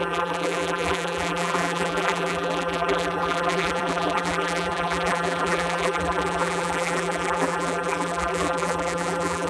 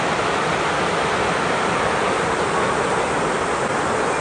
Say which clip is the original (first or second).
second